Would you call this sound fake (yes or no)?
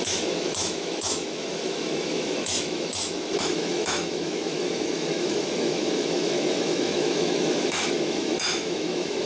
yes